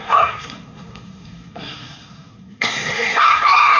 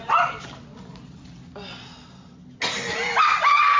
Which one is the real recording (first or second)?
second